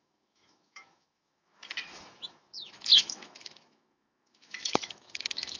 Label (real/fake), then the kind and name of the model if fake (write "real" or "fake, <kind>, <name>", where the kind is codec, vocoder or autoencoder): fake, autoencoder, DAC-VAE